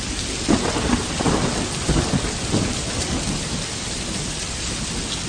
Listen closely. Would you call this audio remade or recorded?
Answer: recorded